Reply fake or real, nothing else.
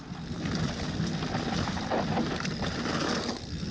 real